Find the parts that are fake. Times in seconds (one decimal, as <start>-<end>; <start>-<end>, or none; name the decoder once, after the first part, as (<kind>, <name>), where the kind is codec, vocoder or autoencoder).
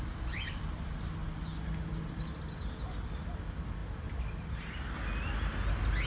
none